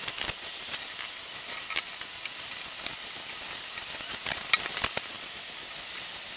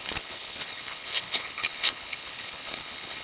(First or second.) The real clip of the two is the first